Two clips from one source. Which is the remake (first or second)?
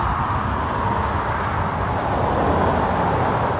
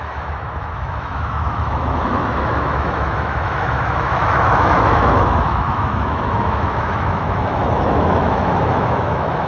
second